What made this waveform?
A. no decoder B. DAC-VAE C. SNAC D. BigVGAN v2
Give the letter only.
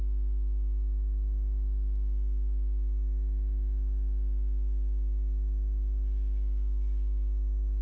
A